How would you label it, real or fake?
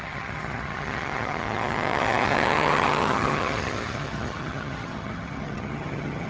fake